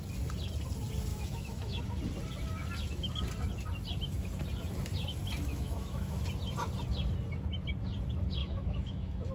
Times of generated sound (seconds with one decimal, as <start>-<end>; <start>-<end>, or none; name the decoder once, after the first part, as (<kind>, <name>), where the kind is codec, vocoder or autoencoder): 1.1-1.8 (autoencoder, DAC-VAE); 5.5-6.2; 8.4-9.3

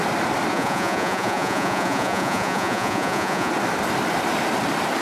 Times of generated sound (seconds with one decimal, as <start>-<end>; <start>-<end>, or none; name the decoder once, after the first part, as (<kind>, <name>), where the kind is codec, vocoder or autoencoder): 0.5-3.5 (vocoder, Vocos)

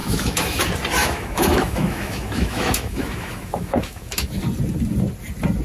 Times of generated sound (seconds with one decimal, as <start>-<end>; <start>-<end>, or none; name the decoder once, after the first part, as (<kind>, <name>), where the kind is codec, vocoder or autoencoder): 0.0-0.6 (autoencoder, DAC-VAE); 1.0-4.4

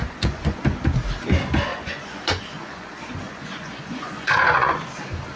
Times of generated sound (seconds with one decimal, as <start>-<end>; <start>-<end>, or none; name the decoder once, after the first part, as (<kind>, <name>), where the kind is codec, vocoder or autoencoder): 0.0-0.6 (vocoder, Vocos); 1.7-4.9

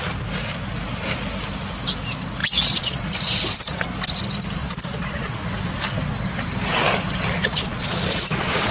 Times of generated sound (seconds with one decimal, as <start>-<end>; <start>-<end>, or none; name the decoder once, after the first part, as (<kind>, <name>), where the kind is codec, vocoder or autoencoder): 2.4-3.0 (vocoder, Vocos); 4.6-5.4; 7.4-8.7